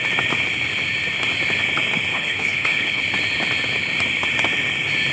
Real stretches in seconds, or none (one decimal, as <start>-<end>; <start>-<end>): 0.0-2.1; 3.0-5.1